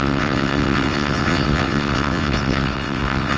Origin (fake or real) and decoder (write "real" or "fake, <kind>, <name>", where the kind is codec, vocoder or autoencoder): fake, vocoder, WaveNeXt